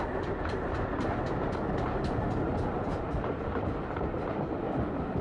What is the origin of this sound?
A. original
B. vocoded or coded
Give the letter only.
A